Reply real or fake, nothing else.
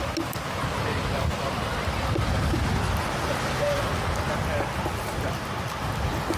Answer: real